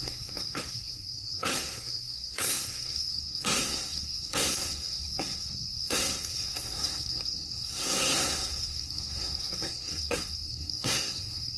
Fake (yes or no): yes